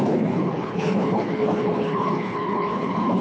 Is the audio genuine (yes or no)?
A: no